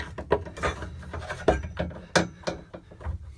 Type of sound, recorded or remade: recorded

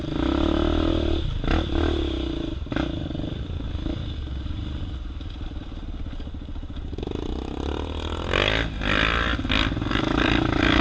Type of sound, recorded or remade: recorded